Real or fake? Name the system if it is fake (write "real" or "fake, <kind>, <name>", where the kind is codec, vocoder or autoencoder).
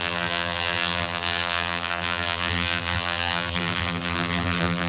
fake, vocoder, BigVGAN v2